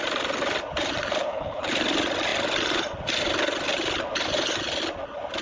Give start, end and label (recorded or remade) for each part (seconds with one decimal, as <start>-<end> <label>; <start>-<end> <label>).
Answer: 0.0-1.2 recorded; 1.2-1.7 remade; 1.7-5.4 recorded